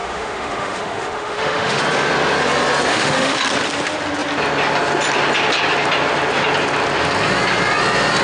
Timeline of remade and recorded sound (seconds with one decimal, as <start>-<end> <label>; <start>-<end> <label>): 0.0-1.8 remade; 1.8-2.9 recorded; 2.9-3.4 remade; 3.4-8.2 recorded